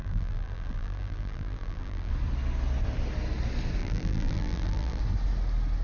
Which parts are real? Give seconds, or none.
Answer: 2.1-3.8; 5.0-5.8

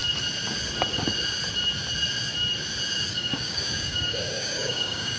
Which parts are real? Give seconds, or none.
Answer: 0.0-3.1